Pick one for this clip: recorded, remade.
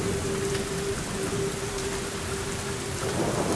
recorded